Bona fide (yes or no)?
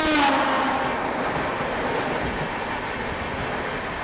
yes